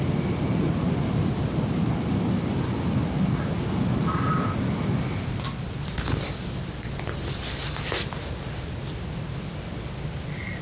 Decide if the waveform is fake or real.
real